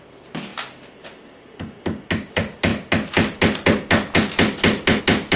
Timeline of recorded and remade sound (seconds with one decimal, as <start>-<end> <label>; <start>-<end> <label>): 0.0-5.4 recorded

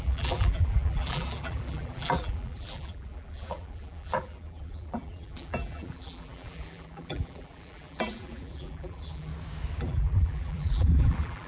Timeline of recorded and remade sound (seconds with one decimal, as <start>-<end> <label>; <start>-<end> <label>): 0.0-9.3 remade; 9.3-9.8 recorded; 9.8-11.5 remade

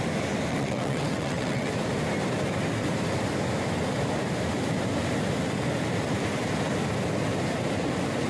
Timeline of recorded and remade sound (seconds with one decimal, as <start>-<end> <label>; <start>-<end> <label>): 0.0-0.5 recorded; 0.5-1.7 remade; 1.7-8.3 recorded

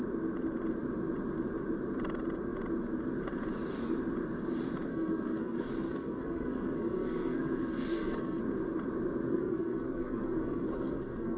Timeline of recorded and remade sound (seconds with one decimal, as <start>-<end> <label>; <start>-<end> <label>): 0.0-4.9 recorded; 4.9-8.4 remade; 8.4-9.3 recorded; 9.3-11.4 remade